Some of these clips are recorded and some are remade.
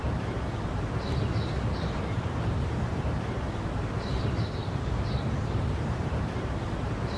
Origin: remade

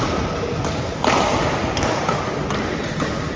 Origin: recorded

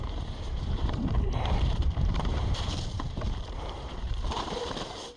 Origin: remade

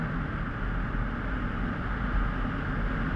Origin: recorded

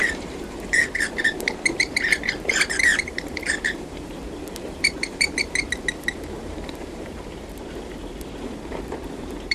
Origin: remade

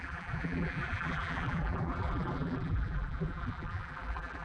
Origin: remade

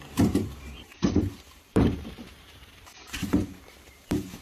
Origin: remade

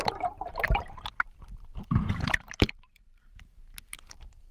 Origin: remade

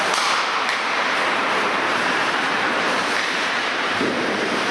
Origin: remade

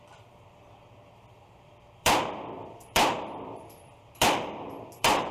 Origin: remade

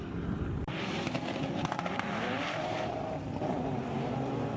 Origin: remade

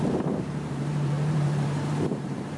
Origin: remade